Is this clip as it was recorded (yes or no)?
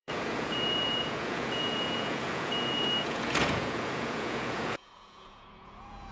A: no